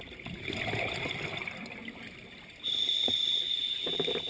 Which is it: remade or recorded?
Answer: recorded